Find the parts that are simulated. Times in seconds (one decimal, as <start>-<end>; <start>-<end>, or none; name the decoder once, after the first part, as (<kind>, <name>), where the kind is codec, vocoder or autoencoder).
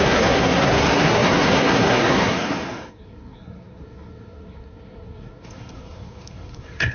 0.0-6.9 (codec, SNAC)